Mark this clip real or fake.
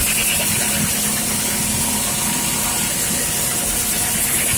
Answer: real